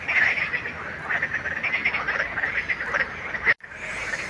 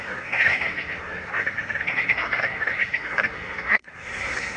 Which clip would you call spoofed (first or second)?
second